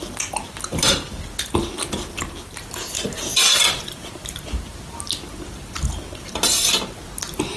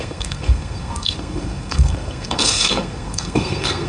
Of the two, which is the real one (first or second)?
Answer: first